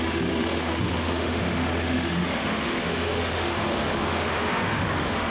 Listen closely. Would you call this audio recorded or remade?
remade